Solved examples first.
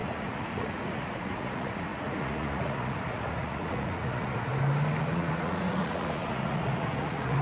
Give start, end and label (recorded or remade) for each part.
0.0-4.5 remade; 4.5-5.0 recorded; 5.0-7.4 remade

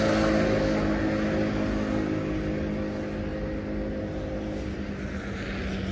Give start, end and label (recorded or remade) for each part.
0.0-5.9 recorded

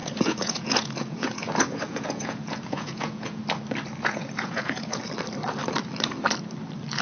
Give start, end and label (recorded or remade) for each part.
0.0-3.4 remade; 3.4-4.0 recorded; 4.0-5.0 remade; 5.0-7.0 recorded

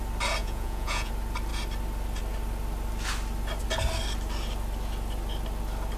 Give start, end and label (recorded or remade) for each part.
0.0-0.4 recorded; 0.4-1.1 remade; 1.1-6.0 recorded

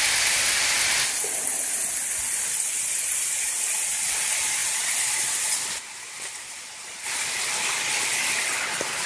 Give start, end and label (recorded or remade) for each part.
0.0-9.1 recorded

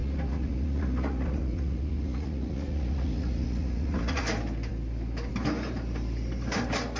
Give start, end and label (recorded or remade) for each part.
0.0-4.2 remade; 4.2-7.0 recorded